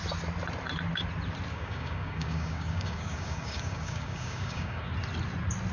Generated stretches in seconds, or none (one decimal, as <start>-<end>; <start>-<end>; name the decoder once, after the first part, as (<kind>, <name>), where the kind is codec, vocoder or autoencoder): 1.5-4.9 (codec, DAC)